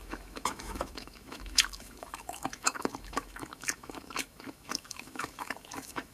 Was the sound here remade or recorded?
remade